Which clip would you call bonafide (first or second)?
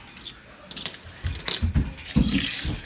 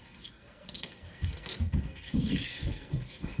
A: first